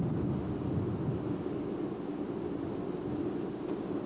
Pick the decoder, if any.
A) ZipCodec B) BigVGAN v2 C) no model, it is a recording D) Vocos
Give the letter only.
C